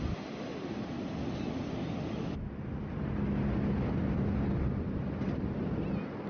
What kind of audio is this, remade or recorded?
recorded